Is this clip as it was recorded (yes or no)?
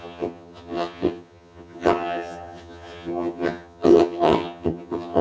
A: no